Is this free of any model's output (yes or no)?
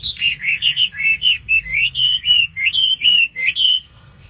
no